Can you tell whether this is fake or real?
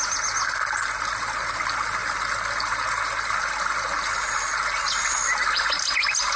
real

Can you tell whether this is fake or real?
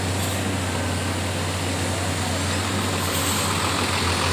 real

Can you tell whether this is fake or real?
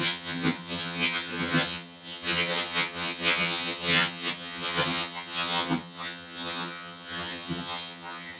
fake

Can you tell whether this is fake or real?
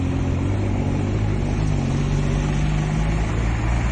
real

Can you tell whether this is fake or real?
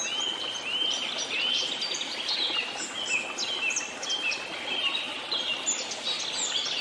real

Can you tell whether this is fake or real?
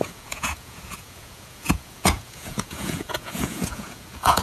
fake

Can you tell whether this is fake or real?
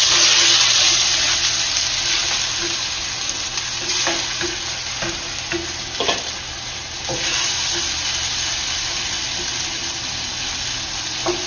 real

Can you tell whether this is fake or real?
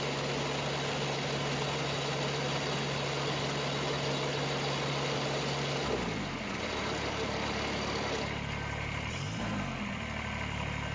real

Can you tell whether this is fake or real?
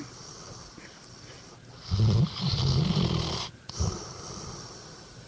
real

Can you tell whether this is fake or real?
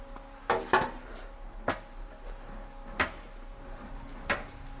real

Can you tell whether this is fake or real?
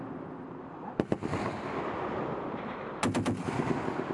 real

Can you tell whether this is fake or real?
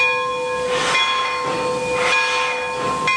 real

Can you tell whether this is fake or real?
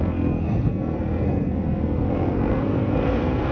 fake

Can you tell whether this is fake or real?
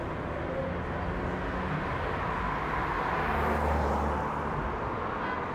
real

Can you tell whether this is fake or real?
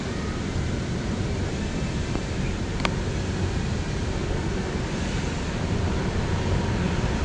real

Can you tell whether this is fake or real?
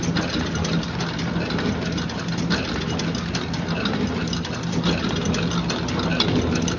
real